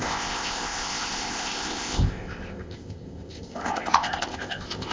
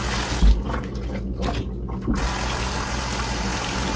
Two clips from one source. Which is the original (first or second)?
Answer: second